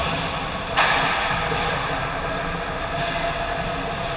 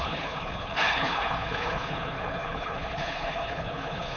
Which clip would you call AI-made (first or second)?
second